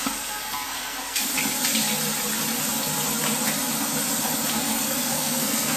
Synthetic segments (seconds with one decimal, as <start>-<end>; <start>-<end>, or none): 0.0-1.3; 4.5-5.8